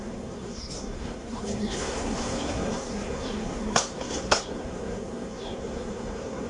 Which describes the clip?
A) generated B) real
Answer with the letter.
A